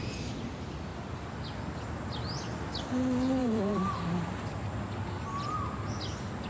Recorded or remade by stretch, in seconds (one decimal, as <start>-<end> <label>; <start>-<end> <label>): 0.0-3.4 recorded; 3.4-4.0 remade; 4.0-6.5 recorded